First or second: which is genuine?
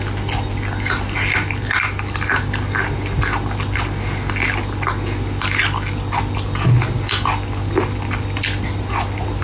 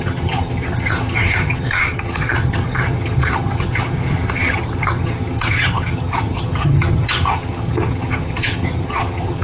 first